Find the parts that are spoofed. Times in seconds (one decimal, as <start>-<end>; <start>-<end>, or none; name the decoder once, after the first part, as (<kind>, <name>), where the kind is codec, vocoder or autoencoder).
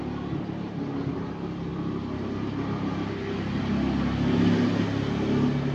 1.7-3.6 (vocoder, BigVGAN v2)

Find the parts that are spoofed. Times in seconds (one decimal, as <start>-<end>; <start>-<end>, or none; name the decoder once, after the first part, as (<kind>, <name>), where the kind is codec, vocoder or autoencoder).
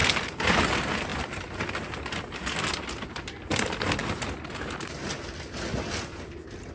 none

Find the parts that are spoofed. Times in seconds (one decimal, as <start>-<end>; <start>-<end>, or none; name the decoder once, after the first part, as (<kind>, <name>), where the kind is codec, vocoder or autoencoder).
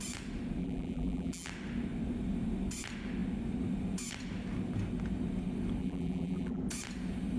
0.6-1.5 (vocoder, BigVGAN v2); 5.8-6.6